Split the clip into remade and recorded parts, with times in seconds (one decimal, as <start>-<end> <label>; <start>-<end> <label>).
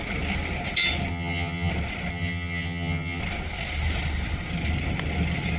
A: 0.0-1.1 recorded; 1.1-1.7 remade; 1.7-2.1 recorded; 2.1-3.2 remade; 3.2-5.6 recorded